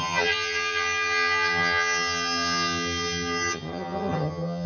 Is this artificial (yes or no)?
yes